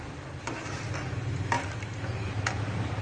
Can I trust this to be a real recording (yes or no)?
yes